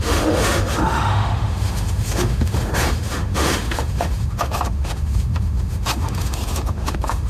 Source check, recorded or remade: remade